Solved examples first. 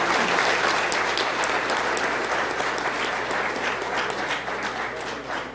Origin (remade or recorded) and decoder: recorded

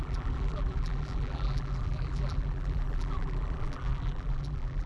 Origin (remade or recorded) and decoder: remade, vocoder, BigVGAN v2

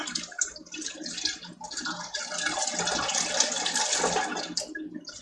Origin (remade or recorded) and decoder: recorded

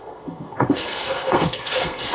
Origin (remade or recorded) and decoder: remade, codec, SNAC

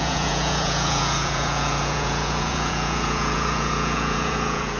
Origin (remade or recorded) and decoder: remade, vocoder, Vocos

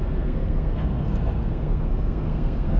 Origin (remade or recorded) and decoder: remade, codec, SNAC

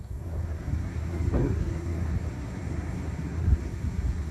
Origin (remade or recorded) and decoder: remade, codec, SNAC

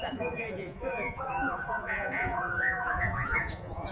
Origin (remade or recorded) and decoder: remade, vocoder, Vocos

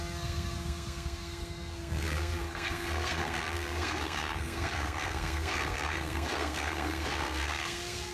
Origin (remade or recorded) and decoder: remade, codec, SNAC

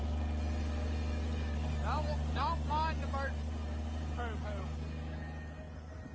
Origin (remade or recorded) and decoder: recorded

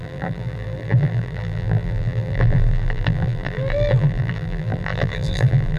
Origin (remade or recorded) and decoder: remade, vocoder, BigVGAN v2